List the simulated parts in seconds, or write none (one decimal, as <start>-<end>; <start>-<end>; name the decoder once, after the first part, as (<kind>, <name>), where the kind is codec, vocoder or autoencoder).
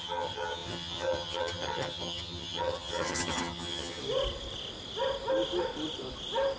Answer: 0.0-4.0 (vocoder, HiFi-GAN)